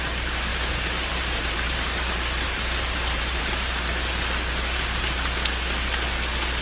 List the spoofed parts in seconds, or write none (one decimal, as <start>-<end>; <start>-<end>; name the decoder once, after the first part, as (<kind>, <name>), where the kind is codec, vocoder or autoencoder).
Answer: 0.5-3.4 (vocoder, BigVGAN v2)